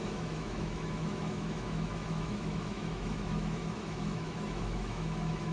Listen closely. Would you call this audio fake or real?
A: fake